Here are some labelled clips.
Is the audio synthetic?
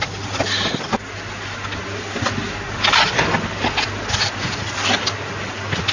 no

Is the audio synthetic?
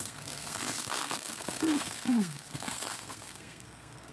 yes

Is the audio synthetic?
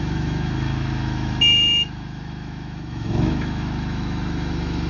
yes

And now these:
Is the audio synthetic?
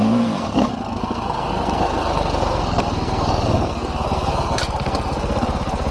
yes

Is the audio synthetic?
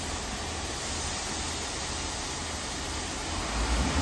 no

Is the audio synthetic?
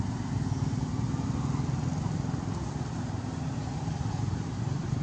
no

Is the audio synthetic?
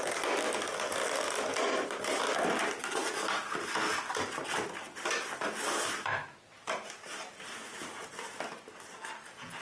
no